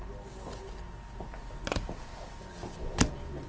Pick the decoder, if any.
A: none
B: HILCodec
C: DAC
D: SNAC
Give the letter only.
A